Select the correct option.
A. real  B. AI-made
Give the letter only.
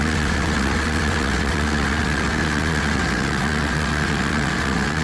B